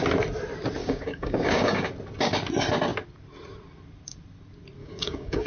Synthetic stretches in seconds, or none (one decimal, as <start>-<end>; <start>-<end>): 0.8-1.9; 4.8-5.5